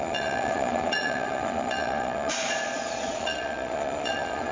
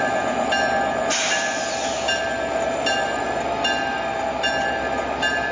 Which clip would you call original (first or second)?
second